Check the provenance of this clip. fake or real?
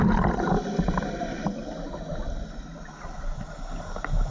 real